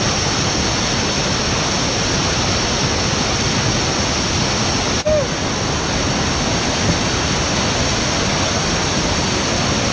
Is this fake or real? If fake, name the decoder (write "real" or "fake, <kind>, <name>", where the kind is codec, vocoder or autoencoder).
real